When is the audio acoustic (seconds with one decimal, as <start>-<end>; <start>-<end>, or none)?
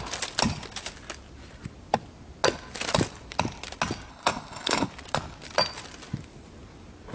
0.0-4.1; 4.9-7.1